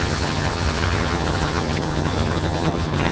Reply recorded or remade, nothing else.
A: remade